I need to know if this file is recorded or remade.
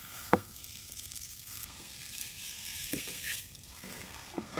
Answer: remade